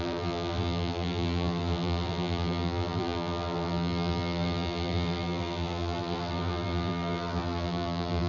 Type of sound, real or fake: fake